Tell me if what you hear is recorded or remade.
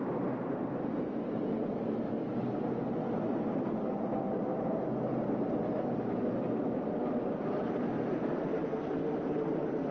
recorded